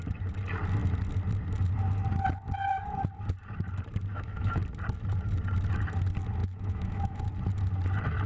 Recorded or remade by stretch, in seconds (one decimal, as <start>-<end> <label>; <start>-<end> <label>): 0.0-4.1 recorded; 4.1-4.6 remade; 4.6-6.4 recorded; 6.4-7.2 remade; 7.2-8.3 recorded

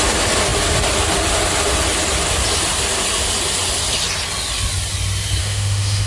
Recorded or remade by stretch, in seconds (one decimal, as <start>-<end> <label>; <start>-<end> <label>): 0.0-5.4 recorded; 5.4-6.1 remade

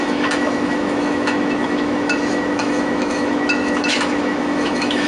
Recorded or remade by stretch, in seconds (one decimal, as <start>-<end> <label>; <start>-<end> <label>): 0.0-5.1 remade

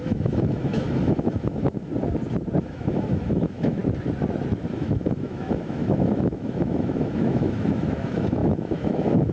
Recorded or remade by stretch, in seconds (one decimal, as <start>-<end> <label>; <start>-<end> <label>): 0.0-1.9 remade; 1.9-2.6 recorded; 2.6-3.8 remade; 3.8-4.7 recorded; 4.7-9.3 remade

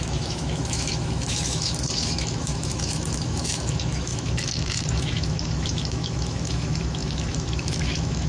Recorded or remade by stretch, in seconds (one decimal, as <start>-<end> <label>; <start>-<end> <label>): 0.0-8.3 remade

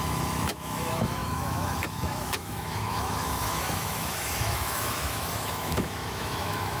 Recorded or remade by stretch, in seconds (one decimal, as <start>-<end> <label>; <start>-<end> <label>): 0.0-6.8 remade

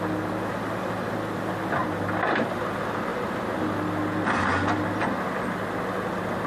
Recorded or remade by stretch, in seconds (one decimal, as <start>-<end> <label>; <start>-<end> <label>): 0.0-6.5 recorded

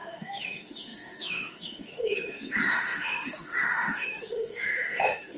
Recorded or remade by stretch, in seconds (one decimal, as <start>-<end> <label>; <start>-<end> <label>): 0.0-5.4 remade